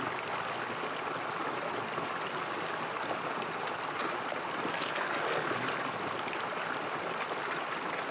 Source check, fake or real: real